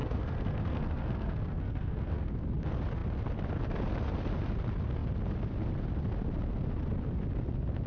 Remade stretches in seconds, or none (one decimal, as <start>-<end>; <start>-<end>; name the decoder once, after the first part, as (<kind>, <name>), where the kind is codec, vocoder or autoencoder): 0.0-2.5 (codec, SNAC)